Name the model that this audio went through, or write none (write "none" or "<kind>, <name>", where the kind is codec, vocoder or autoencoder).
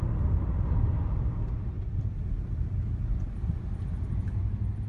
none